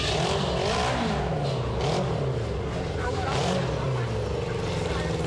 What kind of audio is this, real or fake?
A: real